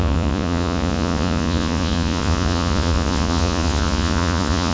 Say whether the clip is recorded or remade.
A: remade